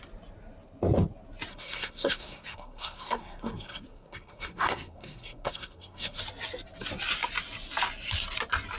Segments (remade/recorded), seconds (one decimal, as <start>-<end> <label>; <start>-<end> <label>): 0.0-1.5 recorded; 1.5-6.2 remade; 6.2-8.8 recorded